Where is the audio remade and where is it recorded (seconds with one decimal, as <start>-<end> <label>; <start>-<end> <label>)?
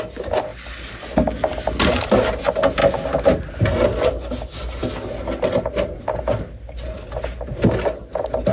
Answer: 0.0-8.5 recorded